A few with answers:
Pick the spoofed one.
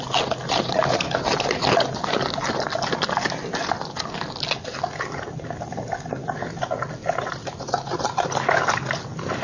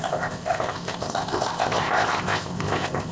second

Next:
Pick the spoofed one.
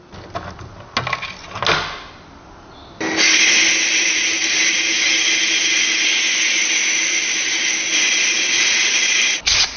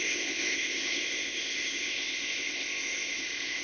second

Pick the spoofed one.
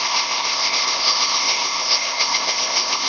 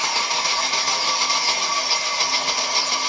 first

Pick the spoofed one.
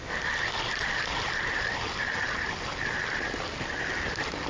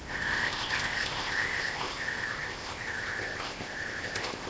second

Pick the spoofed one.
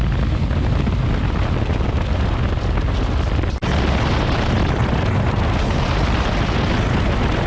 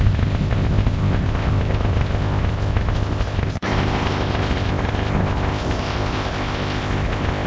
second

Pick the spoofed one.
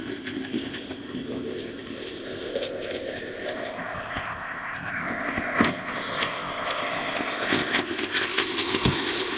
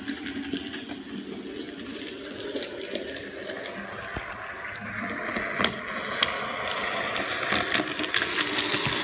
first